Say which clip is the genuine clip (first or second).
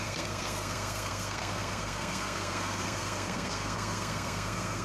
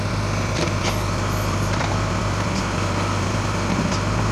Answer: second